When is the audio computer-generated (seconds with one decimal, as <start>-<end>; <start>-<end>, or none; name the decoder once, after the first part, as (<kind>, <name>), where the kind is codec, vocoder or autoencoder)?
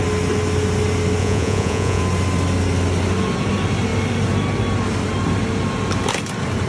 1.2-2.0 (vocoder, Vocos)